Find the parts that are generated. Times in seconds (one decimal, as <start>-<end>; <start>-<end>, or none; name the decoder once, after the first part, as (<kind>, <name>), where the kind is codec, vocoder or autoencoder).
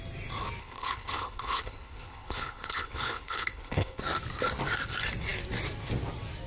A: 0.6-4.0 (codec, HILCodec)